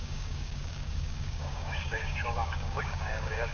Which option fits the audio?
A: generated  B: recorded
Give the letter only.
A